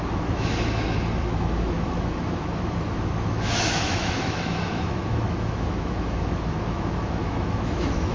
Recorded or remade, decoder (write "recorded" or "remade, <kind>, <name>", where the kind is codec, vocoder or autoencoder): remade, autoencoder, DAC-VAE